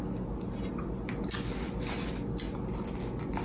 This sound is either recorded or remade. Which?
recorded